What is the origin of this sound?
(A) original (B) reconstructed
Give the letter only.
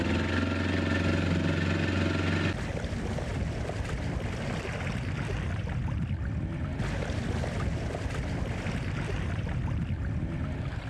A